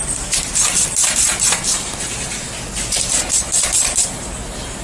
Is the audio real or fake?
real